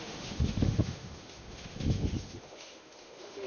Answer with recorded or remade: remade